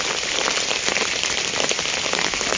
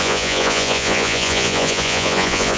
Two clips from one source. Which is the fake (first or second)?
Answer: second